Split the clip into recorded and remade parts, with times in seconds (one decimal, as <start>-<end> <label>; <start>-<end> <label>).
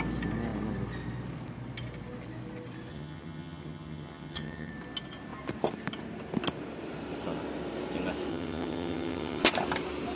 0.0-2.9 recorded; 2.9-4.7 remade; 4.7-8.3 recorded; 8.3-9.4 remade; 9.4-10.2 recorded